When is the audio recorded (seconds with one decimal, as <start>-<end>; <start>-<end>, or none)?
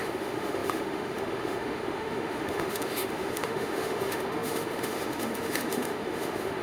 none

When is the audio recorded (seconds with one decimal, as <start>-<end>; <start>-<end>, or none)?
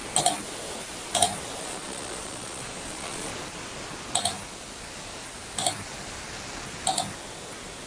0.0-1.6; 3.3-7.9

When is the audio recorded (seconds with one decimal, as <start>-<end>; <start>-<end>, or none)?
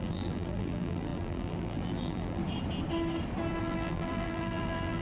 2.4-3.6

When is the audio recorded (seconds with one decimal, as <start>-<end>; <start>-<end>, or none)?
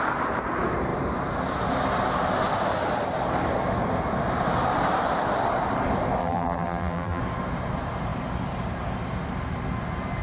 0.0-6.2; 7.2-10.2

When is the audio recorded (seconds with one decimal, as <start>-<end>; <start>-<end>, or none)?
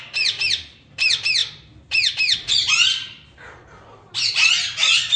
0.0-5.2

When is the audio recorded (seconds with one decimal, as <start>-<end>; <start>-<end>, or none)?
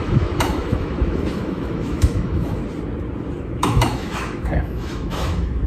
2.6-3.4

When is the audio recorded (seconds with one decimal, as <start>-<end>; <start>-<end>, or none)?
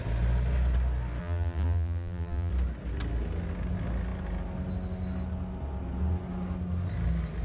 0.0-1.2; 2.5-7.4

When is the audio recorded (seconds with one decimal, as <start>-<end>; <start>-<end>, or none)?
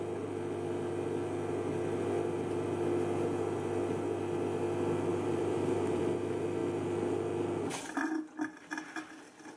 0.0-5.1; 6.0-9.6